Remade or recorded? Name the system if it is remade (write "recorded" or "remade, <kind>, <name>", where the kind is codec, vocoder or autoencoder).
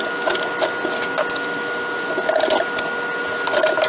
recorded